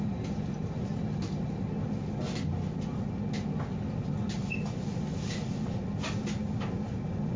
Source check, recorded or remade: recorded